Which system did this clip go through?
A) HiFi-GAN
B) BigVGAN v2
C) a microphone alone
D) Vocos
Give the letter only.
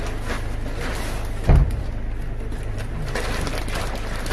C